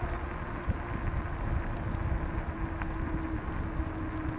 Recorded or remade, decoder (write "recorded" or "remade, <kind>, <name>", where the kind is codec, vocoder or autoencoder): recorded